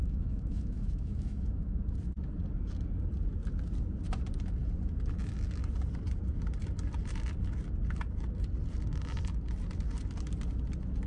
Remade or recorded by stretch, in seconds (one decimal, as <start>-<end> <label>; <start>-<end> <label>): 0.0-1.8 remade; 1.8-11.1 recorded

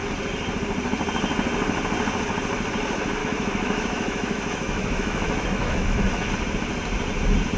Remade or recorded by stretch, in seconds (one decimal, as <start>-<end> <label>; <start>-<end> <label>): 0.0-3.2 recorded; 3.2-6.3 remade; 6.3-7.6 recorded